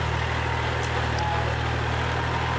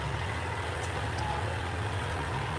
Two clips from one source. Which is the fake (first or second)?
second